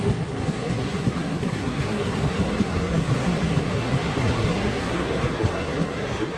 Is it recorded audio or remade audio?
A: remade